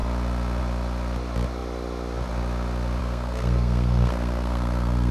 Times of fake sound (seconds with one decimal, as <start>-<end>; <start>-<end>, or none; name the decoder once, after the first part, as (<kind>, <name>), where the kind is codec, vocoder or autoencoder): 3.0-5.1 (codec, SNAC)